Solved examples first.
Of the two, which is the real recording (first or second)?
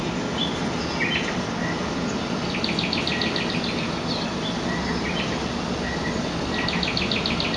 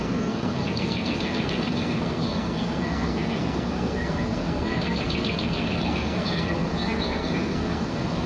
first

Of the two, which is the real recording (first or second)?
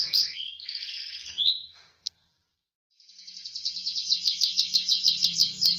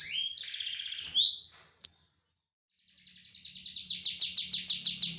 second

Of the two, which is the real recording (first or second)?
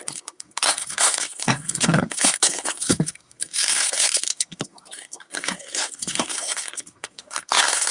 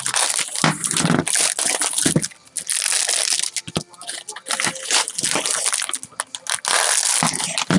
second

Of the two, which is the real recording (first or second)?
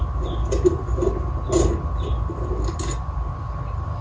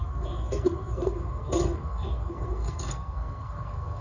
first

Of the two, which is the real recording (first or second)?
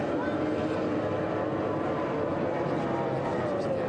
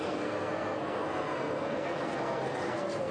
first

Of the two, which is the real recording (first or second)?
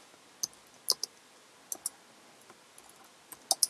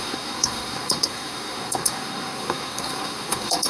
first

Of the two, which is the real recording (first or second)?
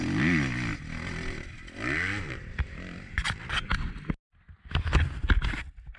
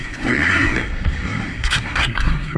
first